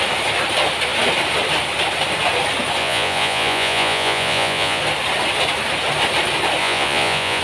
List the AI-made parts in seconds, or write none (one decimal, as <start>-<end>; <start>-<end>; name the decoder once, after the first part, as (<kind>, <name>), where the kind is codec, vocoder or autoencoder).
2.8-4.8 (vocoder, Vocos); 6.6-7.4